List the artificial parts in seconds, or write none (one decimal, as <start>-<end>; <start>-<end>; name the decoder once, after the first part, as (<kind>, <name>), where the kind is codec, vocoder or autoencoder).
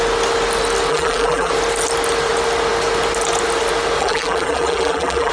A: 0.9-1.5 (vocoder, BigVGAN v2); 4.0-5.3